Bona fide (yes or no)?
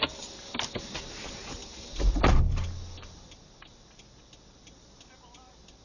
yes